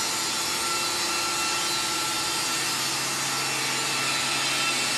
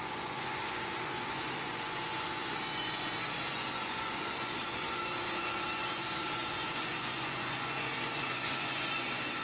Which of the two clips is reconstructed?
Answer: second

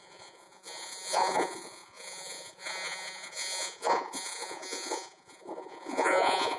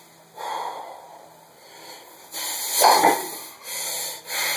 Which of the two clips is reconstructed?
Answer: first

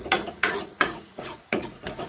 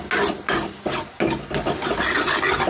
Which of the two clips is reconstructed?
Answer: first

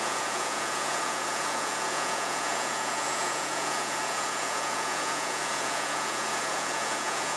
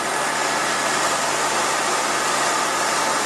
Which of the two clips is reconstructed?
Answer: first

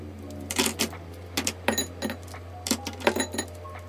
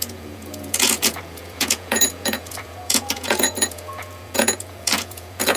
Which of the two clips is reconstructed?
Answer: second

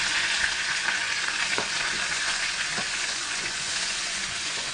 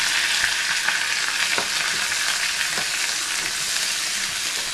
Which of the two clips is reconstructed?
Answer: first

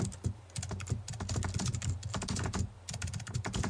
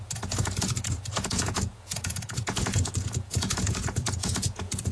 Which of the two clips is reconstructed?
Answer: second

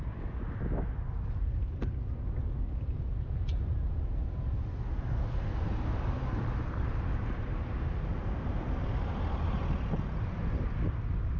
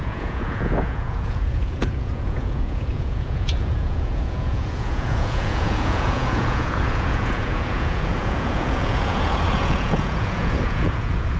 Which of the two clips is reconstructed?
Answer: second